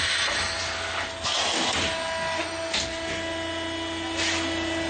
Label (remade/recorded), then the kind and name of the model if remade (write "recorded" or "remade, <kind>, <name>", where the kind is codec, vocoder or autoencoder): recorded